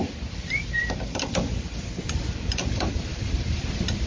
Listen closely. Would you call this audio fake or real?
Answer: real